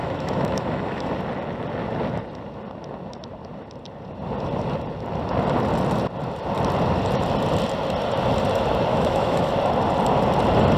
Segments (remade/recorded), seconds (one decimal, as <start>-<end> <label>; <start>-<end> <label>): 0.0-1.1 remade; 1.1-8.9 recorded; 8.9-9.5 remade; 9.5-10.8 recorded